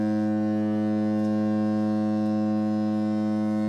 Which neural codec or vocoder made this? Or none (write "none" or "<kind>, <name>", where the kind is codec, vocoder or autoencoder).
none